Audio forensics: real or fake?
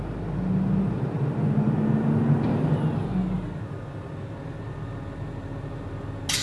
real